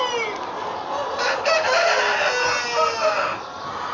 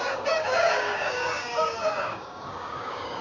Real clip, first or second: first